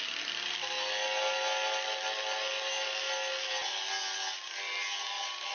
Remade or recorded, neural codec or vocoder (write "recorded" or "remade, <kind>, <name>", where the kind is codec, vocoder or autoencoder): recorded